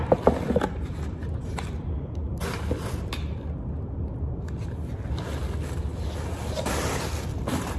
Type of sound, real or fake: real